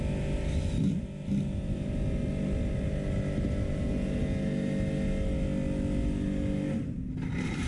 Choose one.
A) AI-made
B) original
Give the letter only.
B